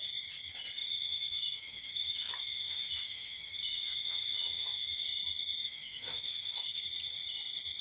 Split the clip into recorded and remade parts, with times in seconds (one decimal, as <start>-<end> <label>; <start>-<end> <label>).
0.0-0.8 recorded; 0.8-5.0 remade; 5.0-5.6 recorded; 5.6-6.8 remade; 6.8-7.8 recorded